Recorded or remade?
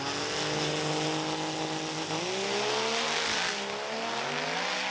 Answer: recorded